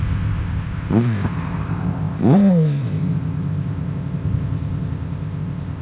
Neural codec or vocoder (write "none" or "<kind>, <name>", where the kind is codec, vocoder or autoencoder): codec, ZipCodec